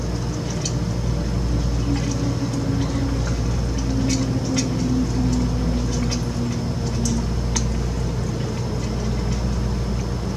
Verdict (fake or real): real